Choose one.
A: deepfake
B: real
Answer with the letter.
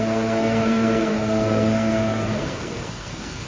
A